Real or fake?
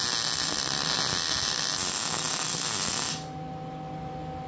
real